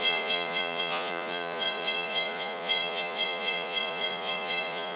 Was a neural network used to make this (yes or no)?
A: yes